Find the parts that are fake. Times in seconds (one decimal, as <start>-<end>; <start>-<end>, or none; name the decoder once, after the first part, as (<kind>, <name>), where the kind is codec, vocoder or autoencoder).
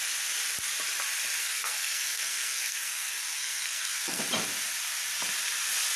1.4-4.2 (codec, SNAC)